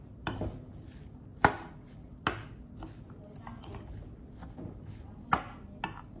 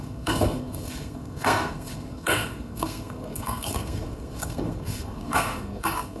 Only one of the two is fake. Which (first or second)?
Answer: second